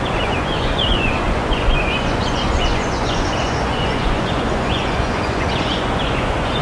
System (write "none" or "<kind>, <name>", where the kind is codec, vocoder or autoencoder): vocoder, Vocos